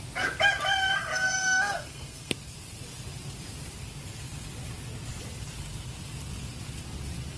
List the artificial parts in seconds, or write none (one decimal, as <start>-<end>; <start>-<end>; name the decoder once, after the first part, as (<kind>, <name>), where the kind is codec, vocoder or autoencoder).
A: 0.9-2.3 (codec, SNAC)